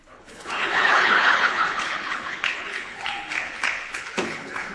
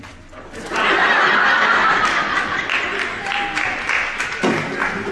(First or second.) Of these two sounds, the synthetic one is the first